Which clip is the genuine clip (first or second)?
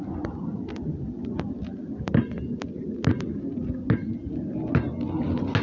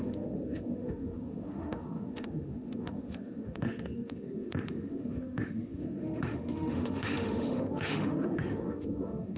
first